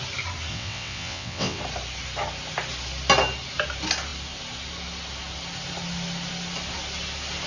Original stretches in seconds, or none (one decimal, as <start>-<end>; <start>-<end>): 0.0-0.5; 1.6-7.5